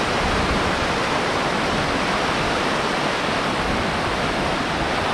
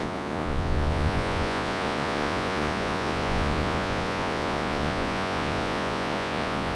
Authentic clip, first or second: first